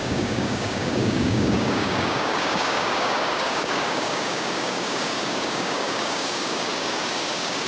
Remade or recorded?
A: remade